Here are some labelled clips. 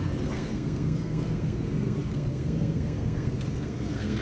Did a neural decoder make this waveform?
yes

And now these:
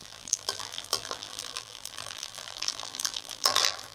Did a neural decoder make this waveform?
yes